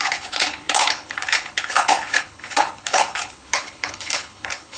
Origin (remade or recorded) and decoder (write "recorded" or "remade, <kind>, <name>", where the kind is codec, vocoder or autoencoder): remade, codec, HILCodec